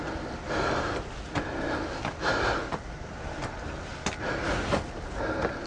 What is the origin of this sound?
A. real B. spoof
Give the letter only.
A